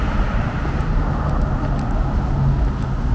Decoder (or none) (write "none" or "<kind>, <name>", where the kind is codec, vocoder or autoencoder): none